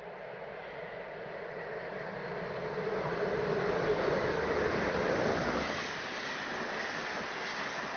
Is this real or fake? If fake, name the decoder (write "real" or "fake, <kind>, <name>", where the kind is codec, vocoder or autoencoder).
real